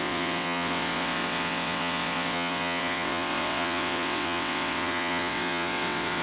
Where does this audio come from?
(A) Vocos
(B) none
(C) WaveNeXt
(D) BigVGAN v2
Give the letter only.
C